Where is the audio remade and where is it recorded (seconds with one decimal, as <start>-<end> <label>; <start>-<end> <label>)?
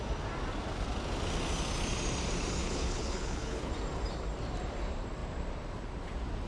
0.0-2.6 recorded; 2.6-3.7 remade; 3.7-6.5 recorded